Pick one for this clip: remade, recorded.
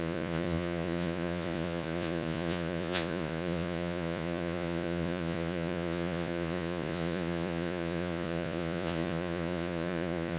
remade